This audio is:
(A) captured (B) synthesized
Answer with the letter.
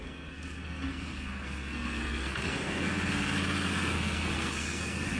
B